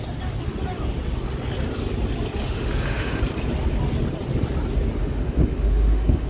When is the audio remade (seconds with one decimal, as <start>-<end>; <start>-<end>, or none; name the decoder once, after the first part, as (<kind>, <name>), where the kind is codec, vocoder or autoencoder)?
2.4-3.2 (autoencoder, DAC-VAE); 5.0-6.3